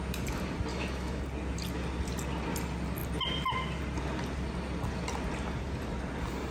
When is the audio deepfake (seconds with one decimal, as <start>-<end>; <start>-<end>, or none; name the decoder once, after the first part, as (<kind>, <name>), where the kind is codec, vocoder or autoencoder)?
0.7-1.2 (autoencoder, DAC-VAE)